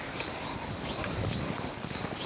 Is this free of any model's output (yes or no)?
yes